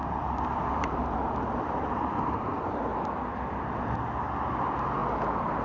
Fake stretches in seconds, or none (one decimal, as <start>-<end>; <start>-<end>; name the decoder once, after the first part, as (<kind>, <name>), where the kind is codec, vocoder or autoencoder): 0.0-2.4 (vocoder, BigVGAN v2)